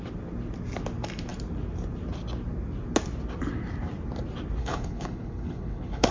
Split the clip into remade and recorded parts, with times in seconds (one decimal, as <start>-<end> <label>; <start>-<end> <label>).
0.0-4.6 recorded; 4.6-6.1 remade